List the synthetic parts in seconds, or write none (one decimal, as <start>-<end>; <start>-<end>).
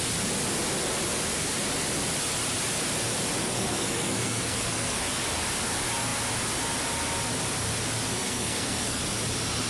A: 3.4-5.0; 8.1-9.0